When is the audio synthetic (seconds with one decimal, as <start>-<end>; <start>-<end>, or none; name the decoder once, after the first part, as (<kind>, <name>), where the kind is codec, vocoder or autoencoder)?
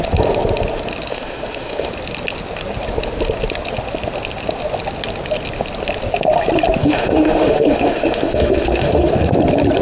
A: 1.1-1.9 (autoencoder, DAC-VAE); 6.8-9.1